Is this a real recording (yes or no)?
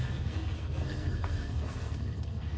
no